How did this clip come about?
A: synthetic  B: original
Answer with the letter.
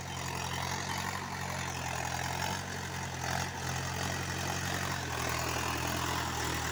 B